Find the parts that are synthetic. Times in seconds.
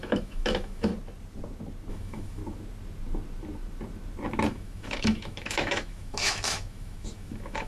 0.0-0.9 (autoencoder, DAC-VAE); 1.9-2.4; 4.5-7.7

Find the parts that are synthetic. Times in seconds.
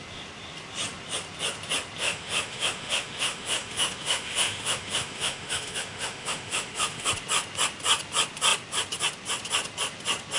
2.0-7.1 (autoencoder, DAC-VAE)